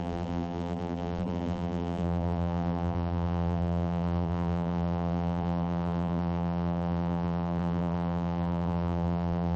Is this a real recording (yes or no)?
no